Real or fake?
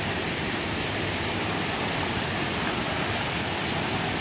real